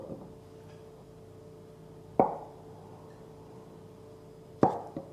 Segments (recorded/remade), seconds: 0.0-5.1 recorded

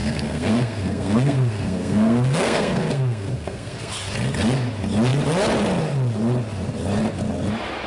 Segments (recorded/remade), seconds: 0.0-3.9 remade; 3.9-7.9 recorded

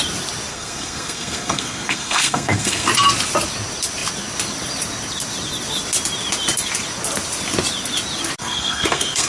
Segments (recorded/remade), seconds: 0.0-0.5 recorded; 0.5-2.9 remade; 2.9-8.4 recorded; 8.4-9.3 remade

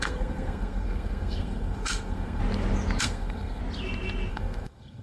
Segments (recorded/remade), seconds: 0.0-2.4 remade; 2.4-3.0 recorded; 3.0-3.6 remade; 3.6-4.3 recorded; 4.3-5.0 remade